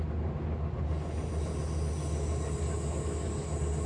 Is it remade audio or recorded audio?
recorded